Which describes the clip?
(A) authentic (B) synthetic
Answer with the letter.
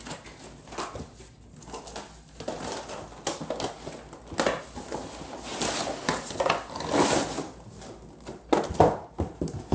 A